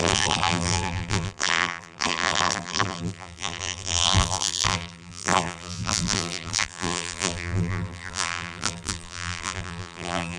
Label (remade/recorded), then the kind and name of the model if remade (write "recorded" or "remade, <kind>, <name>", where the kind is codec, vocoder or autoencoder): remade, vocoder, BigVGAN v2